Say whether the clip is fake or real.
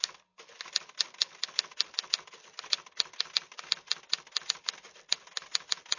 real